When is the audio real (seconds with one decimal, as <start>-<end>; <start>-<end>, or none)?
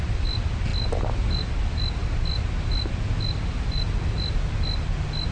0.0-5.3